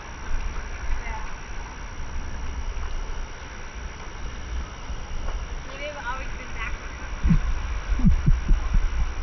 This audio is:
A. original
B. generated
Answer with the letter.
A